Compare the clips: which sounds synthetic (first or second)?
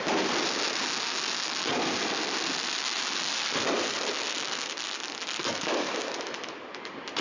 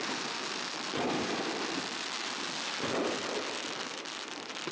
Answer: second